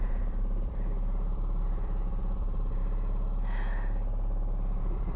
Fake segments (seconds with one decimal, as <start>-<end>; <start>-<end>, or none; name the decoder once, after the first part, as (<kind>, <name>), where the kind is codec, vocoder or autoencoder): 0.0-2.8 (vocoder, BigVGAN v2); 4.8-5.2